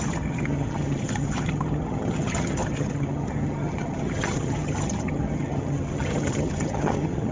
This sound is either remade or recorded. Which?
remade